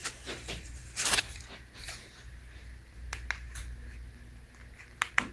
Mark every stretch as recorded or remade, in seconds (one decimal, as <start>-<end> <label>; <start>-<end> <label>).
0.0-1.4 remade; 1.4-5.3 recorded